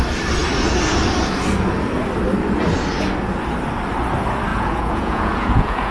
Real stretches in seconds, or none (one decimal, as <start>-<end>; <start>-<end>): 0.0-4.5